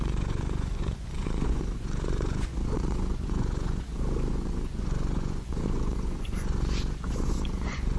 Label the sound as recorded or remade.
remade